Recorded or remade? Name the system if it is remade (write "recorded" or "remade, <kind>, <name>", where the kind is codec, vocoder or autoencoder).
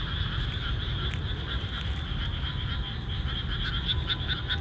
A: recorded